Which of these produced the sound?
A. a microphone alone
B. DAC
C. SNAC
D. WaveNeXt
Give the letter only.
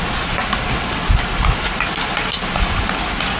A